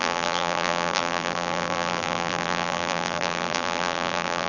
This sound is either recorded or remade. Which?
remade